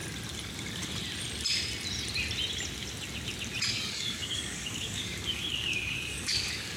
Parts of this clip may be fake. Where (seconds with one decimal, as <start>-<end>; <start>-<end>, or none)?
3.7-6.8